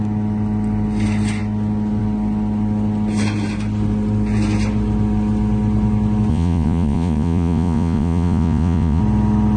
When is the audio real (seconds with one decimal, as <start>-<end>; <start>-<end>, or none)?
0.0-6.3; 9.0-9.6